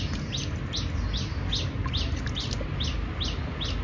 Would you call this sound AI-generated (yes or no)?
no